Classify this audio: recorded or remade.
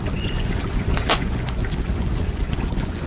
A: remade